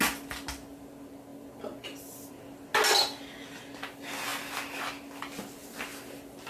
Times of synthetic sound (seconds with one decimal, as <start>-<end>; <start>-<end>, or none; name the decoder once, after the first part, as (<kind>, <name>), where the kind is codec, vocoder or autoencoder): none